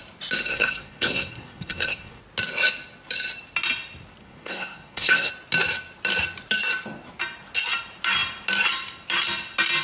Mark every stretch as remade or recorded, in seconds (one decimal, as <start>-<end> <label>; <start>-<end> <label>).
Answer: 0.0-0.5 recorded; 0.5-2.2 remade; 2.2-4.2 recorded; 4.2-5.3 remade; 5.3-9.8 recorded